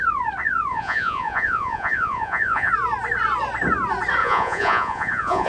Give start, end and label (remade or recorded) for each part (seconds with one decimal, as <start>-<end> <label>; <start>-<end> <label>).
0.0-0.7 recorded; 0.7-2.7 remade; 2.7-4.2 recorded; 4.2-5.5 remade